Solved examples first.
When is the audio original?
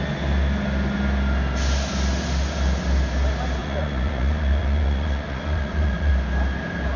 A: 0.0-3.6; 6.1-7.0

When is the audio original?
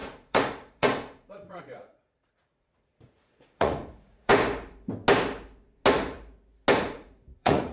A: 4.3-6.9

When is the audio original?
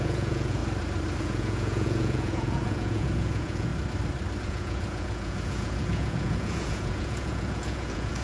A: 0.6-1.2; 3.7-4.4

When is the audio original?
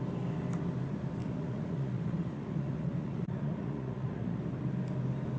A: 0.0-1.2; 4.4-5.4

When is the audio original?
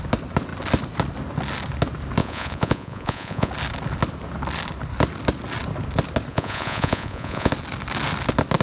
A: 0.0-2.2; 3.5-6.3; 7.5-8.6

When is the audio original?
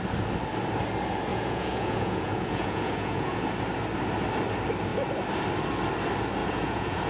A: 0.0-1.3; 3.5-6.4